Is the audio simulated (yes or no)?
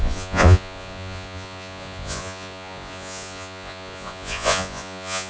yes